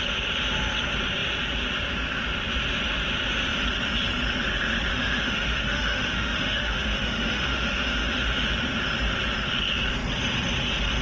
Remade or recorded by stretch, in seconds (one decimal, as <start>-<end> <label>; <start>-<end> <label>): 0.0-4.9 recorded; 4.9-8.5 remade; 8.5-11.0 recorded